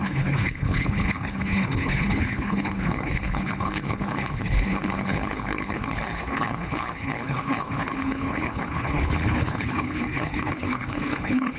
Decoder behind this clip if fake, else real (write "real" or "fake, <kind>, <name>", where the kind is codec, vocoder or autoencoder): fake, codec, HILCodec